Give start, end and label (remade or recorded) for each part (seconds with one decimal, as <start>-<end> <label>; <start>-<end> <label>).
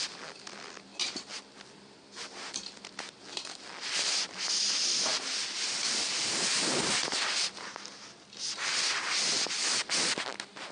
0.0-10.7 recorded